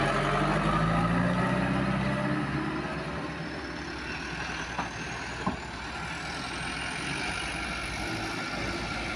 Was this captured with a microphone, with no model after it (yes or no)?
yes